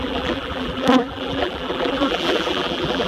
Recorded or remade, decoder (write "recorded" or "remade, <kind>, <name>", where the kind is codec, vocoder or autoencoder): remade, vocoder, BigVGAN v2